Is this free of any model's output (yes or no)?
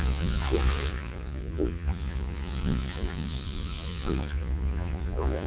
no